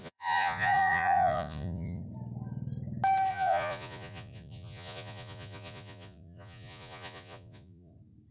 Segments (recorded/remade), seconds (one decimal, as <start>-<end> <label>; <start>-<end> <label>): 0.0-2.0 remade; 2.0-3.3 recorded; 3.3-7.9 remade; 7.9-8.3 recorded

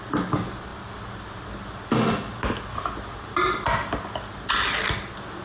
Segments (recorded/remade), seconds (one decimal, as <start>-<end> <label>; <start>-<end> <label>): 0.0-5.4 recorded